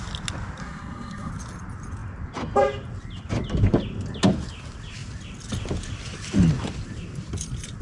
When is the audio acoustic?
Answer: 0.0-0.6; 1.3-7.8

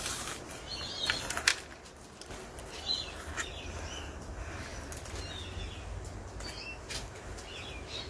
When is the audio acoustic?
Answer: 0.0-8.1

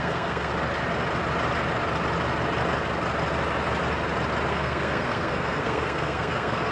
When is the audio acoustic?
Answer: 0.5-4.5

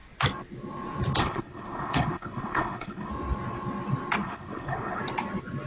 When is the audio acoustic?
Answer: 0.0-1.2; 3.1-4.2; 5.0-5.7

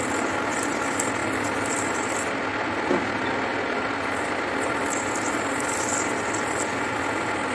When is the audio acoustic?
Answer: 0.0-7.5

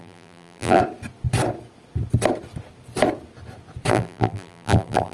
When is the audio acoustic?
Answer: 0.8-3.9

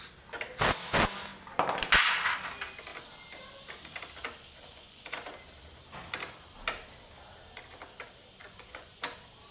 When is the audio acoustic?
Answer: 0.0-4.7; 5.3-8.4; 9.0-9.5